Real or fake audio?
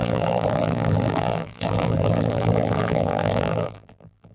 fake